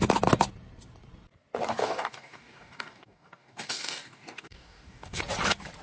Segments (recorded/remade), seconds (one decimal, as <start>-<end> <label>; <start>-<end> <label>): 0.0-1.8 recorded; 1.8-5.2 remade; 5.2-5.8 recorded